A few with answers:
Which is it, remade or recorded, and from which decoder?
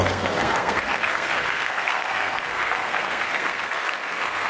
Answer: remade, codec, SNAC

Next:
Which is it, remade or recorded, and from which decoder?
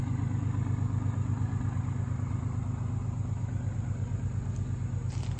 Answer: recorded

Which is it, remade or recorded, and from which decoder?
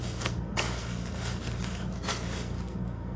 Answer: remade, codec, SNAC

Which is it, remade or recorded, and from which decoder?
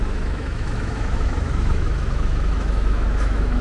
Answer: remade, autoencoder, DAC-VAE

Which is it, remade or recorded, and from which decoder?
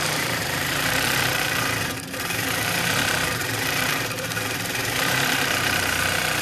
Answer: remade, vocoder, BigVGAN v2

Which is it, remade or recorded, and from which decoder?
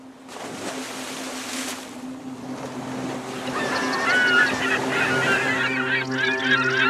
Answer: recorded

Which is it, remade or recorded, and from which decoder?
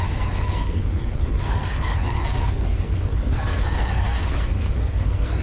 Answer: remade, codec, SNAC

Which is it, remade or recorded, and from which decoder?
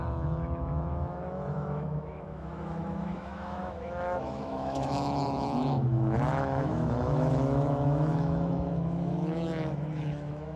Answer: remade, autoencoder, DAC-VAE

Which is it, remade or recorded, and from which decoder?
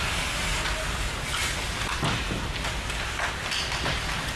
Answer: recorded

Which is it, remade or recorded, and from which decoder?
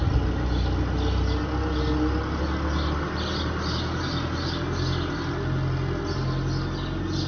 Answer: recorded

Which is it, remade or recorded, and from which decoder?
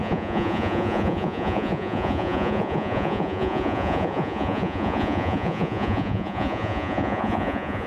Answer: remade, vocoder, Vocos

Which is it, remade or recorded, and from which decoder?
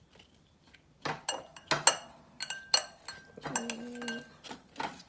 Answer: recorded